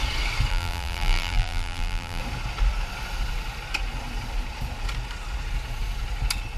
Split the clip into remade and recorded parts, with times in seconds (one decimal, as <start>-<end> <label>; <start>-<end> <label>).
0.0-0.5 recorded; 0.5-2.2 remade; 2.2-6.6 recorded